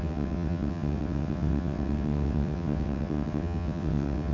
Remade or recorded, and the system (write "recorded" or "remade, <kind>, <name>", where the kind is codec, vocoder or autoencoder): remade, vocoder, WaveNeXt